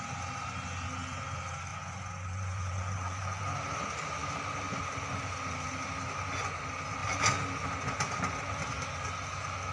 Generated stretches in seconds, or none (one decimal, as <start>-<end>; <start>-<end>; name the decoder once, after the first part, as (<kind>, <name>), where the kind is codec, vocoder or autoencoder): 1.7-3.4 (vocoder, Vocos)